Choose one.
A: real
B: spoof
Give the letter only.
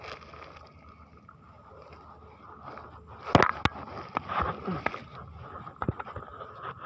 A